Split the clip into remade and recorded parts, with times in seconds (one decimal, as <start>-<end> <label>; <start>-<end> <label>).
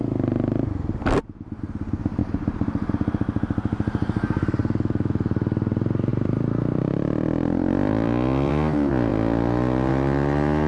0.0-2.2 recorded; 2.2-2.9 remade; 2.9-4.6 recorded; 4.6-5.1 remade; 5.1-6.1 recorded; 6.1-8.5 remade; 8.5-10.7 recorded